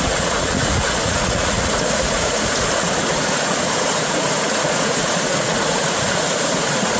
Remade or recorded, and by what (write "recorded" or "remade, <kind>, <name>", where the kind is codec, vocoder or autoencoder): remade, vocoder, Vocos